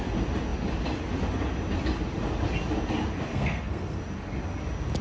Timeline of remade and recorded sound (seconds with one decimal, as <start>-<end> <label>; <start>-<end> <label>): 0.0-3.3 recorded; 3.3-4.0 remade; 4.0-5.0 recorded